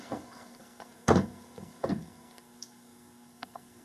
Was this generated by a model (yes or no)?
yes